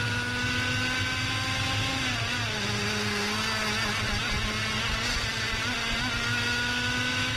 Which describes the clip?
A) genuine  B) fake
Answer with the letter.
A